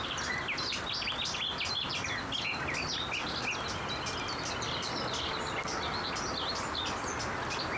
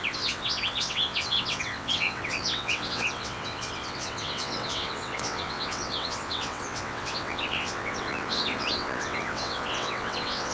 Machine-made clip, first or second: second